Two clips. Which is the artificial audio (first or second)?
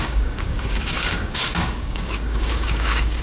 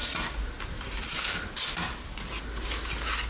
first